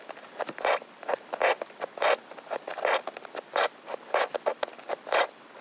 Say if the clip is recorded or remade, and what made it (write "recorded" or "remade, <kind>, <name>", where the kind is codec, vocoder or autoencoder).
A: recorded